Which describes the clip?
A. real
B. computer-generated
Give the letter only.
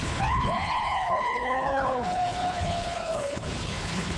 B